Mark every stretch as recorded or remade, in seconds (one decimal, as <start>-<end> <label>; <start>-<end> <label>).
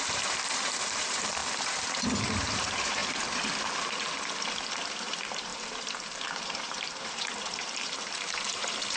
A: 0.0-3.0 remade; 3.0-4.8 recorded; 4.8-9.0 remade